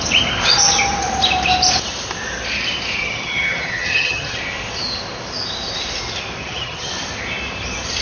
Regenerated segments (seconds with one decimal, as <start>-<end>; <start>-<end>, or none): 3.0-4.4; 6.4-6.9